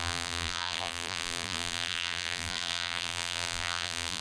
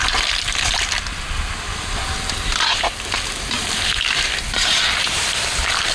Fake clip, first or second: first